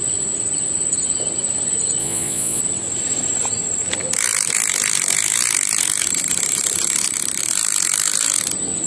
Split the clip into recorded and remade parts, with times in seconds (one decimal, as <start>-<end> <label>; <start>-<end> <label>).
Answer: 0.0-2.0 recorded; 2.0-2.6 remade; 2.6-8.9 recorded